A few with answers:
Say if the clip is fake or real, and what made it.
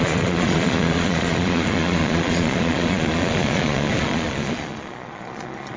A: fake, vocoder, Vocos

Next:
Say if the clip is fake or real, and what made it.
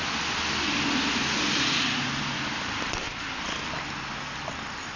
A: real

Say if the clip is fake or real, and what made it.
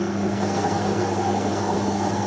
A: fake, codec, SNAC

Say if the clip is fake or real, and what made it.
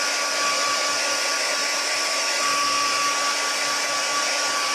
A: real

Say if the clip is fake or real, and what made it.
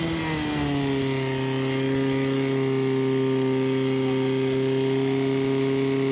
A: real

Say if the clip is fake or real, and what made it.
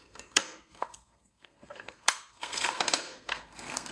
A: fake, codec, SNAC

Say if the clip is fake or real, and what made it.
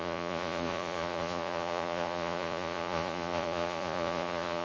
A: fake, vocoder, Vocos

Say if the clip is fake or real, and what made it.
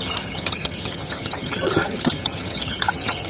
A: fake, vocoder, HiFi-GAN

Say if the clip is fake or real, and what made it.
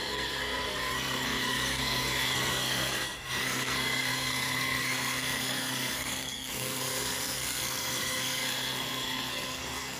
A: fake, codec, SNAC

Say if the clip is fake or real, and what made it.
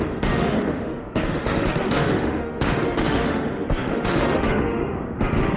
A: fake, autoencoder, DAC-VAE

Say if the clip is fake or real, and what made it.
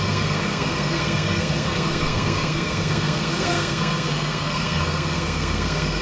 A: fake, codec, SNAC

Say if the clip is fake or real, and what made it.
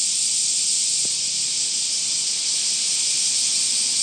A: real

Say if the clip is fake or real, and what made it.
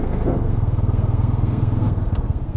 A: fake, codec, SNAC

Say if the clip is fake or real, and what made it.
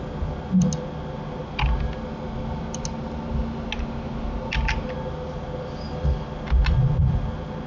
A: real